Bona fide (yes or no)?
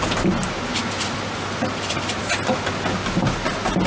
yes